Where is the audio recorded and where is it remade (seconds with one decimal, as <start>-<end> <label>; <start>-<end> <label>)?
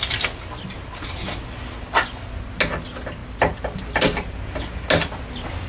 0.0-5.7 recorded